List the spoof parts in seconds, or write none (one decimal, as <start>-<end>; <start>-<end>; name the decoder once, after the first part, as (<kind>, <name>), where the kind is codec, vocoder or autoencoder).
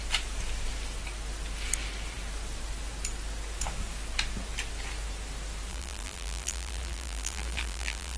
5.7-8.2 (vocoder, BigVGAN v2)